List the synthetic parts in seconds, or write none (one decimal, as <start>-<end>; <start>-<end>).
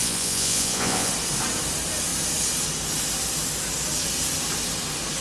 0.0-1.1